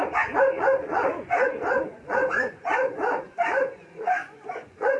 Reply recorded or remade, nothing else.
remade